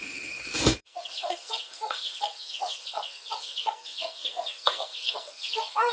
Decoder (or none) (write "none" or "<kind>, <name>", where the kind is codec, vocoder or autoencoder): codec, SNAC